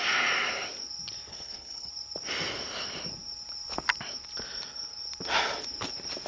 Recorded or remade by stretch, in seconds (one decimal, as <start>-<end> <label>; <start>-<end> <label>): 0.0-1.3 recorded; 1.3-1.9 remade; 1.9-6.3 recorded